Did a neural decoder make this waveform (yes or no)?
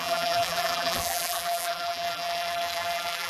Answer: yes